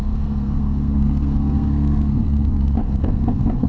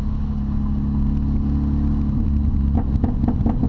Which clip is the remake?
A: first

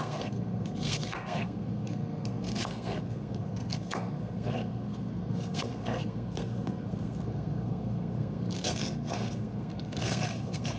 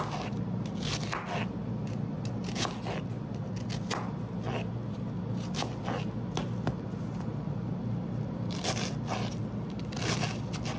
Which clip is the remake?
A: first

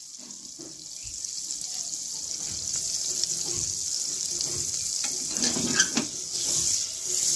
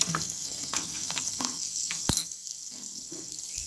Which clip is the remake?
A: second